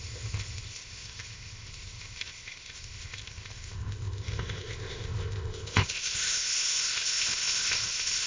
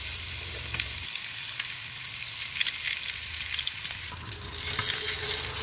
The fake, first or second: first